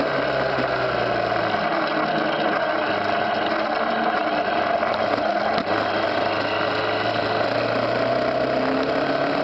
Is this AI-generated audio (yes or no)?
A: no